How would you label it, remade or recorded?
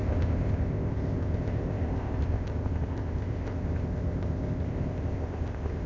remade